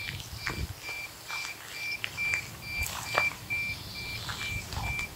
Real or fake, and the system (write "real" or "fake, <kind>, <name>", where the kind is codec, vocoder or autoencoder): real